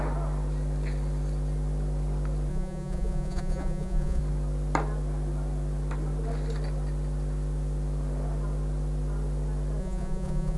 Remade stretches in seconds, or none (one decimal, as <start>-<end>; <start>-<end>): 2.5-4.2; 9.8-10.6

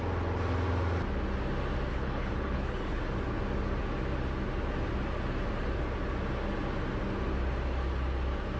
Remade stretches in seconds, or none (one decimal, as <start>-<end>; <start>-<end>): 1.9-3.0

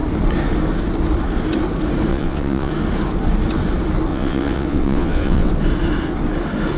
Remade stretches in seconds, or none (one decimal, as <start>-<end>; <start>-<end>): 2.1-2.7; 4.1-5.5

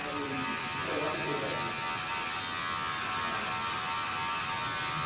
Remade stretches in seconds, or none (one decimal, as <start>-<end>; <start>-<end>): none

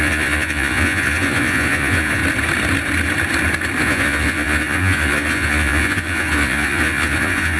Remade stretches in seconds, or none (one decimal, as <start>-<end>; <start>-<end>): 0.0-2.2; 3.8-7.6

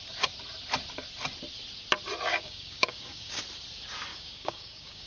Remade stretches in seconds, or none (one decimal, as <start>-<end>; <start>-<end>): 2.3-3.4; 4.1-5.1

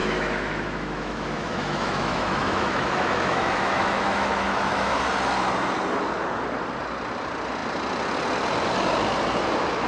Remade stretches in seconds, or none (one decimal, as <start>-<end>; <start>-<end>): 0.0-5.0